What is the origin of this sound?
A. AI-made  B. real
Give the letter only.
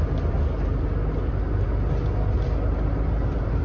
B